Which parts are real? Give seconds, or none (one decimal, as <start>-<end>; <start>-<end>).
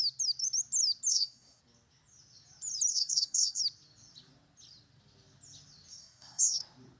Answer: 0.0-1.1; 1.6-2.9; 3.6-5.9; 6.6-7.0